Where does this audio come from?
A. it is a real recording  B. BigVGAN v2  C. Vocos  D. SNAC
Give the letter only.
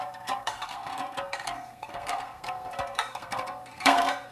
D